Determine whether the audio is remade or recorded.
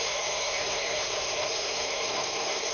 remade